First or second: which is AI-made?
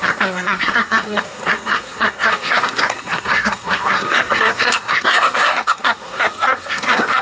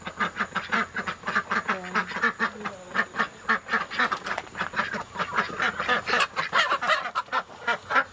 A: first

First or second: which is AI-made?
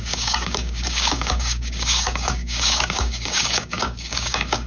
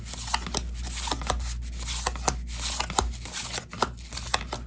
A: first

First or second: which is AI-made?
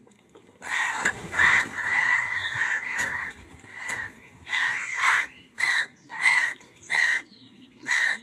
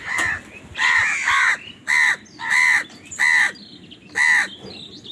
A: first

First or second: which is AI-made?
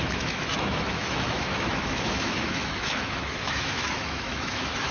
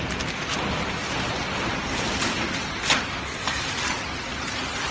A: first